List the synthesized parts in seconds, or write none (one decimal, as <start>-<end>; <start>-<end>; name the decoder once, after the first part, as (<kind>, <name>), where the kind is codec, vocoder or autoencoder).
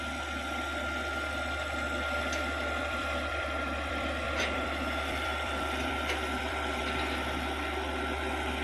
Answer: 2.8-6.8 (vocoder, BigVGAN v2)